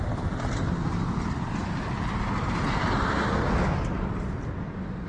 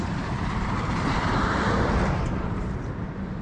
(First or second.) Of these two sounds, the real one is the first